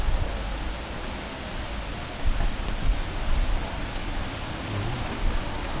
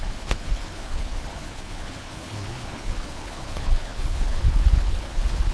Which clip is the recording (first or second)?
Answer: first